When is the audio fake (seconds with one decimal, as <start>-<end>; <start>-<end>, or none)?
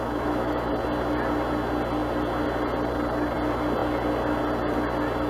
0.0-0.7